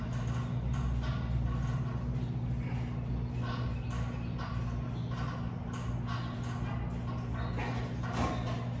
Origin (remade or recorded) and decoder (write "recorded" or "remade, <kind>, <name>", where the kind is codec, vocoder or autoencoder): recorded